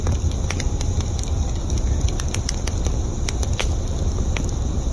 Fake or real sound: real